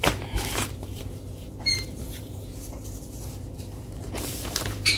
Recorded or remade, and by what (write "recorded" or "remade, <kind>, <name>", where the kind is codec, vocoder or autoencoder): remade, vocoder, BigVGAN v2